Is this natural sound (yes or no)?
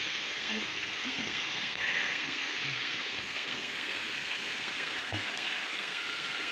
no